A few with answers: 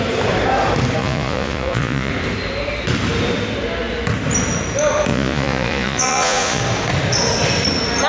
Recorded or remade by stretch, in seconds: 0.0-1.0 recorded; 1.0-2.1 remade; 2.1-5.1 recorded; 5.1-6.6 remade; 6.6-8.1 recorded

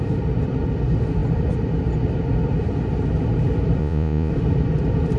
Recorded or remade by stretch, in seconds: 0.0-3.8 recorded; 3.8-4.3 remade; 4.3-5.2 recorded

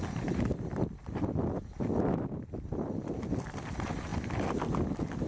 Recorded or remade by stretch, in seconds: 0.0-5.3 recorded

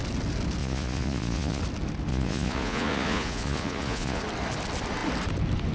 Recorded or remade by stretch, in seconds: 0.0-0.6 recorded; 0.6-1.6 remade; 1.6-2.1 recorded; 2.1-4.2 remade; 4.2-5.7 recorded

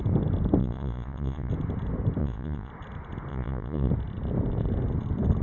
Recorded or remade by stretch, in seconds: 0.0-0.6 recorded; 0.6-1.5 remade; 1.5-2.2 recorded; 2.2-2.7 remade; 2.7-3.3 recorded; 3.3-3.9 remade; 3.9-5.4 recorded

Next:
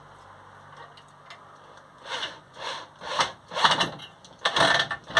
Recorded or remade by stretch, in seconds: 0.0-1.9 recorded; 1.9-2.7 remade; 2.7-5.2 recorded

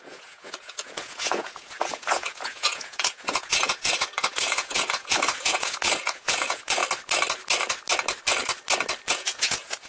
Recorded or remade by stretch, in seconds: 0.0-6.8 remade; 6.8-9.1 recorded; 9.1-9.9 remade